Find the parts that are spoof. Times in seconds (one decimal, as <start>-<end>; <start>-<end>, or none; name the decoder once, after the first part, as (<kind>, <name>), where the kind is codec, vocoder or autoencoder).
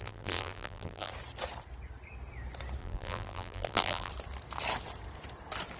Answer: 0.0-1.1 (vocoder, BigVGAN v2); 2.8-4.1